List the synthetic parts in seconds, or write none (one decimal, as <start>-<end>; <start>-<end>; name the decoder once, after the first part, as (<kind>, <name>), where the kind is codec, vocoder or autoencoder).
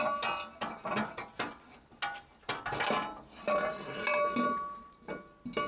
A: none